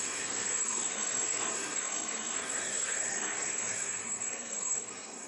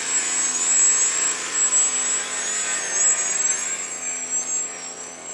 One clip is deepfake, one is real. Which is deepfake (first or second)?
first